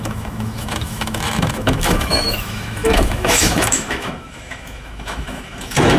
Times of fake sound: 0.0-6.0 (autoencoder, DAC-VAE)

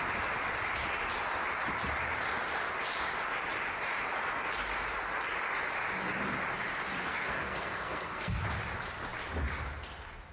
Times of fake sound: 7.1-8.4 (codec, SNAC)

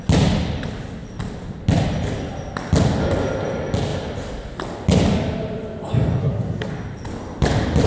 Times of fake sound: 6.2-6.7 (codec, SNAC)